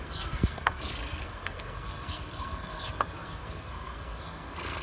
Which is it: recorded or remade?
remade